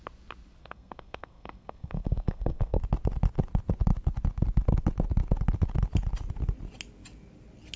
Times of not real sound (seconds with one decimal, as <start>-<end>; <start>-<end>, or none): 0.6-2.8